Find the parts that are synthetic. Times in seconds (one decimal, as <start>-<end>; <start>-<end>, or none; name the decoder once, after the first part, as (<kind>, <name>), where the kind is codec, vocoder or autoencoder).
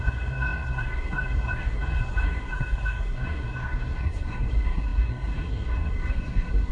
0.0-6.7 (codec, SNAC)